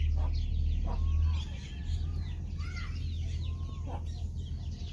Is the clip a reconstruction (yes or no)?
no